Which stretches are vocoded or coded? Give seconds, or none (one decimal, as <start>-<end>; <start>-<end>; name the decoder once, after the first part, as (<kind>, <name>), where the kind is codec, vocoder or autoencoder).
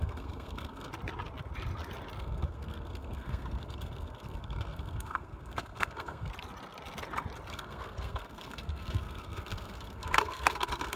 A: 0.0-0.9 (codec, SNAC); 2.2-6.3; 7.5-11.0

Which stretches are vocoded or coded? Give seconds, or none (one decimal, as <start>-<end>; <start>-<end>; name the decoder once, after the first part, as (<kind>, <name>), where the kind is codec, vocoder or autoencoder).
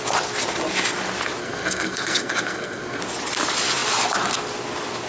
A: 1.4-3.0 (codec, SNAC)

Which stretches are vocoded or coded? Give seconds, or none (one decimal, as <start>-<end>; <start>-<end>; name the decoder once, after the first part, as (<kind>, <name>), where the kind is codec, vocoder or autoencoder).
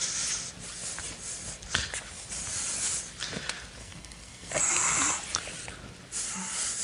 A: 3.8-4.6 (codec, SNAC)